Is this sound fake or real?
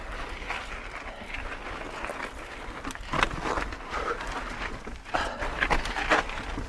real